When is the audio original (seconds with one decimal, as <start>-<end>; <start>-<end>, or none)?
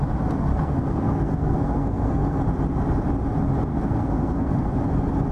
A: 0.0-0.5; 2.4-3.7; 4.7-5.3